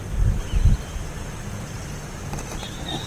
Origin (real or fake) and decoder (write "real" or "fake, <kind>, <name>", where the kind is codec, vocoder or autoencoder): real